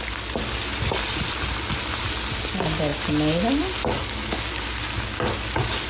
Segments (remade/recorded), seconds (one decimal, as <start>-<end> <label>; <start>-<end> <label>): 0.0-0.7 recorded; 0.7-2.5 remade; 2.5-5.9 recorded